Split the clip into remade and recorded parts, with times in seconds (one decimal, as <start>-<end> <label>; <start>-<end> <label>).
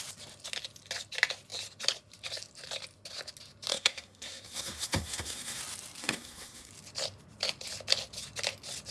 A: 0.0-3.7 recorded; 3.7-5.6 remade; 5.6-6.0 recorded; 6.0-6.7 remade; 6.7-8.9 recorded